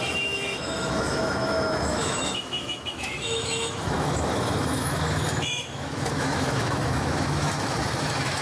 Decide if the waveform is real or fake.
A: fake